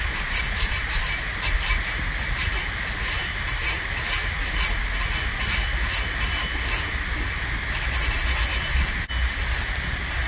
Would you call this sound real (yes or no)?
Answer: yes